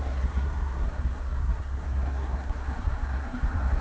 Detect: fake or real fake